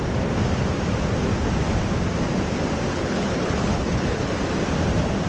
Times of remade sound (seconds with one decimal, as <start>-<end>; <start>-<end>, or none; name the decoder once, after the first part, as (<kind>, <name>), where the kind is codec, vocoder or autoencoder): 2.9-4.3 (codec, HILCodec)